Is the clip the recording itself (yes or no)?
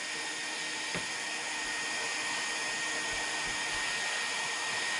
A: yes